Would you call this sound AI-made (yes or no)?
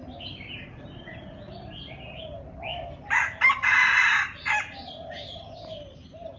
no